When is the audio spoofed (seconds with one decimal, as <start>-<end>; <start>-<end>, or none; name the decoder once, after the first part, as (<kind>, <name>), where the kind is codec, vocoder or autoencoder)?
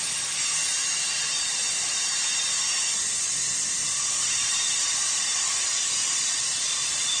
0.6-2.2 (vocoder, BigVGAN v2); 3.8-7.2